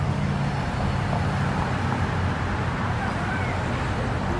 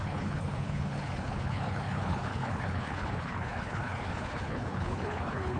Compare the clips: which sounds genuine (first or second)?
first